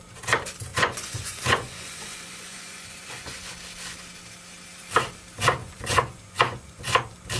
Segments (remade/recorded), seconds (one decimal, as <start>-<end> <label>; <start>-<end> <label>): 0.0-0.7 recorded; 0.7-3.5 remade; 3.5-5.6 recorded; 5.6-6.9 remade; 6.9-7.4 recorded